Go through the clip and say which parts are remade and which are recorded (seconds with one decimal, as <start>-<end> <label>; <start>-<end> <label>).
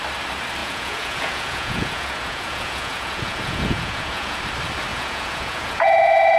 0.0-0.6 recorded; 0.6-4.4 remade; 4.4-4.9 recorded; 4.9-6.4 remade